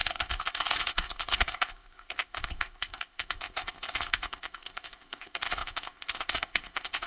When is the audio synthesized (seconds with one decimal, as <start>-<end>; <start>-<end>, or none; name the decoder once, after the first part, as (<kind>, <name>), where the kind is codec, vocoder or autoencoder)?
0.0-7.1 (codec, ZipCodec)